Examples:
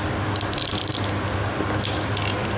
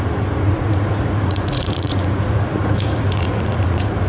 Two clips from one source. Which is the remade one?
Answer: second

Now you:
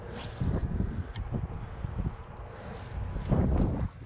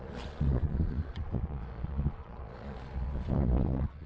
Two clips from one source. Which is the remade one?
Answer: second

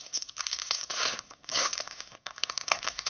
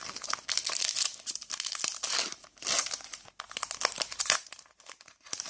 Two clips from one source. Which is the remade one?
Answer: first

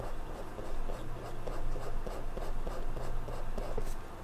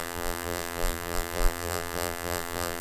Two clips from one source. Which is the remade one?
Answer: second